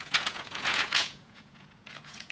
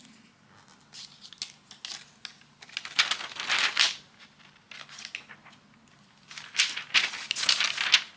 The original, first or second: second